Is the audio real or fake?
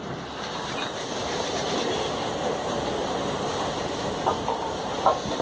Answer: fake